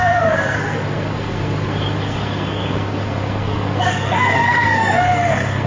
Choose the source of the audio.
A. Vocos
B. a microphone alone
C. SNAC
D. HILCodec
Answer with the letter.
C